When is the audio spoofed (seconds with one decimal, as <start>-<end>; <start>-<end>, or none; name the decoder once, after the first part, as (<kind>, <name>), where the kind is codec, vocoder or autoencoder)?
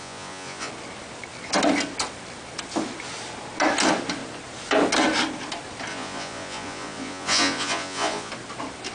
0.0-0.7 (vocoder, Vocos); 5.9-8.3